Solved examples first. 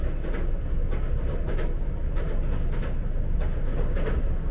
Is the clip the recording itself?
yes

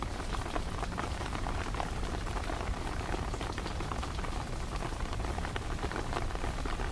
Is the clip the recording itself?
yes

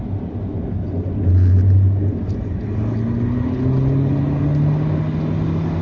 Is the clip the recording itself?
yes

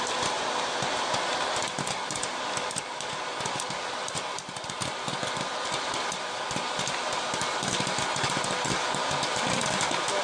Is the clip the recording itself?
yes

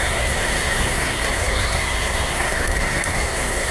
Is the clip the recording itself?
no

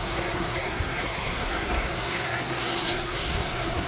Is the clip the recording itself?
no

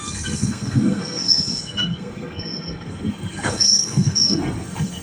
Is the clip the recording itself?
no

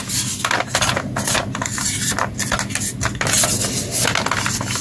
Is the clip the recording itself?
yes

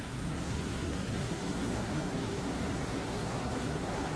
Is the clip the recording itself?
no